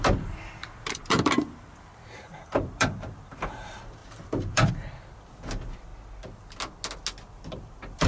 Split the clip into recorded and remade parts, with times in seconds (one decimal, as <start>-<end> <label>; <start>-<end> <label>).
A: 0.0-5.9 remade; 5.9-7.3 recorded; 7.3-8.1 remade